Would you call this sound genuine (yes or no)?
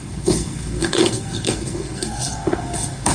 no